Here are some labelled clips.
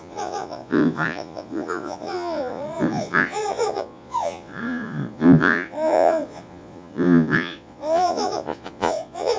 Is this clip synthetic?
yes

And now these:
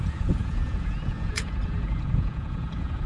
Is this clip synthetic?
yes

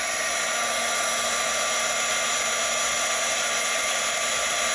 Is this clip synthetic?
no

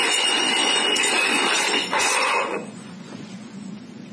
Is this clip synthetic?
yes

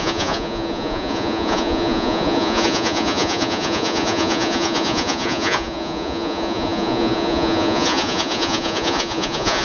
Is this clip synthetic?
yes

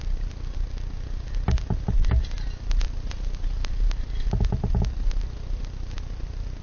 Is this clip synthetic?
no